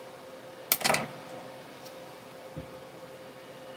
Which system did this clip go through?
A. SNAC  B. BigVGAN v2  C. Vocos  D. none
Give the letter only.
D